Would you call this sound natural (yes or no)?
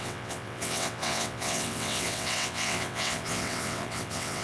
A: no